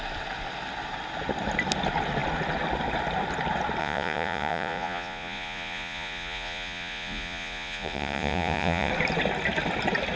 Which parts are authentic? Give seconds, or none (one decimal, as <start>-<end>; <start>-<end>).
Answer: 0.0-3.8; 8.9-10.2